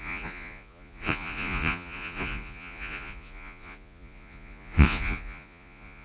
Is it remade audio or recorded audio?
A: remade